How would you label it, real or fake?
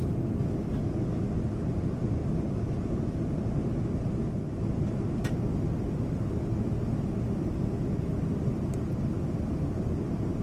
real